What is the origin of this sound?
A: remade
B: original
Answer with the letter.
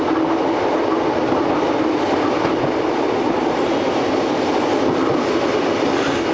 B